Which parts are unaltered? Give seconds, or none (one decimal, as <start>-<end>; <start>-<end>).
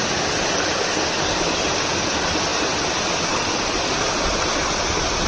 0.0-5.3